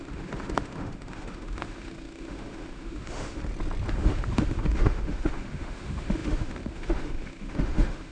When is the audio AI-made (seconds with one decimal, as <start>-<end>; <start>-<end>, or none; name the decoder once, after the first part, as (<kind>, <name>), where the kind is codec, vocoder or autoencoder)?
0.0-3.4 (autoencoder, DAC-VAE); 3.9-8.1